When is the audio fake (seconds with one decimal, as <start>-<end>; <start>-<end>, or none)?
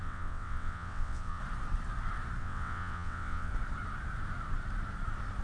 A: 0.0-1.4; 2.4-3.5